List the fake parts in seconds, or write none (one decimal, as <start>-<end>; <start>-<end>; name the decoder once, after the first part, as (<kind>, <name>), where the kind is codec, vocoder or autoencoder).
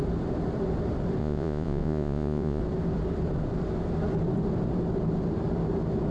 1.2-2.6 (vocoder, Vocos)